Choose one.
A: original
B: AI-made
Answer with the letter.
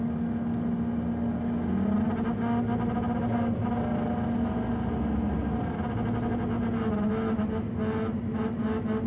A